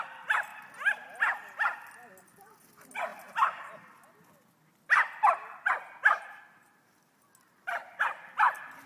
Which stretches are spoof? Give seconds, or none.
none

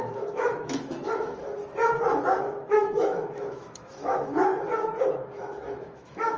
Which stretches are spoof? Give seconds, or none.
0.0-1.6 (autoencoder, DAC-VAE); 2.4-4.5; 5.0-6.4